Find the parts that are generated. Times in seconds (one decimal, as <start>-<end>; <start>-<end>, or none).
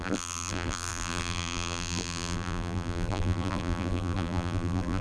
0.0-5.0